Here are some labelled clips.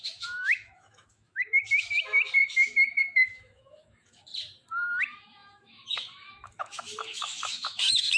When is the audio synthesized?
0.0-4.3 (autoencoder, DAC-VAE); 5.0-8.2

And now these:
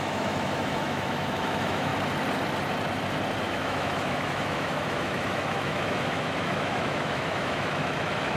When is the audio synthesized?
0.0-1.9 (autoencoder, DAC-VAE); 3.4-8.4